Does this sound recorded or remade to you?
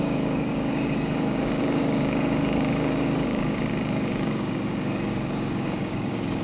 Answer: remade